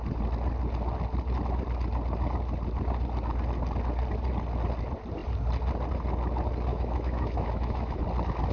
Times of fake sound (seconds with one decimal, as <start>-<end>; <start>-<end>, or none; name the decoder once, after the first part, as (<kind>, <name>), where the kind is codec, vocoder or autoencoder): 6.7-8.0 (autoencoder, DAC-VAE)